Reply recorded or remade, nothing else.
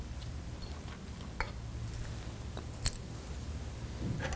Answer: recorded